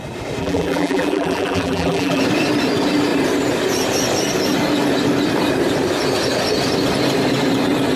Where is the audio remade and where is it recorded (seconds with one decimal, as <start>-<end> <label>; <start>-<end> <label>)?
0.0-0.4 recorded; 0.4-2.2 remade; 2.2-8.0 recorded